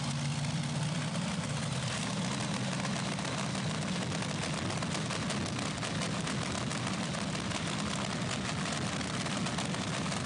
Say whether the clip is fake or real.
real